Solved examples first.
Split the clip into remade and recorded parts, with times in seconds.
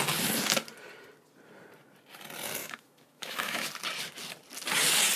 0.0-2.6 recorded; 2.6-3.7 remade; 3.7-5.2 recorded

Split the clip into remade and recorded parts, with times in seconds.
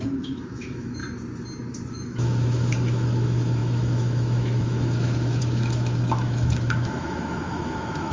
0.0-1.0 remade; 1.0-1.9 recorded; 1.9-8.1 remade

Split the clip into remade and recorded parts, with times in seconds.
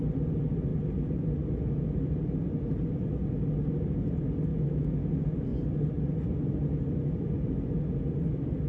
0.0-4.5 recorded; 4.5-5.1 remade; 5.1-8.7 recorded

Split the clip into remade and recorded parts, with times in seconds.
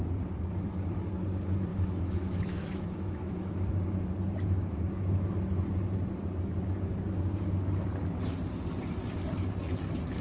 0.0-1.7 recorded; 1.7-3.7 remade; 3.7-10.2 recorded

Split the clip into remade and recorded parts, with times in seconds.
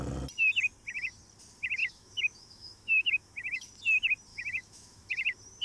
0.0-1.8 recorded; 1.8-3.7 remade; 3.7-4.3 recorded; 4.3-5.1 remade; 5.1-5.6 recorded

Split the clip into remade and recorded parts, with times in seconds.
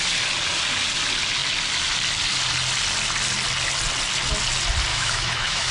0.0-4.9 recorded; 4.9-5.7 remade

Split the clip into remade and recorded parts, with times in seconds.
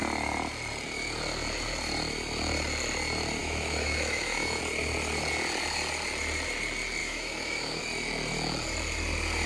0.0-3.4 recorded; 3.4-4.6 remade; 4.6-7.0 recorded; 7.0-7.8 remade; 7.8-9.5 recorded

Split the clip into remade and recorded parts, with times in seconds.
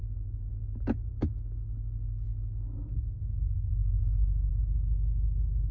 0.0-0.6 recorded; 0.6-5.7 remade